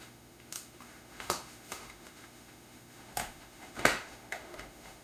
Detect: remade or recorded remade